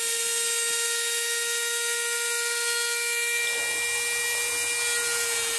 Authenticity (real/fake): real